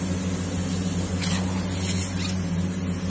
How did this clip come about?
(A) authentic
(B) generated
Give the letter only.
A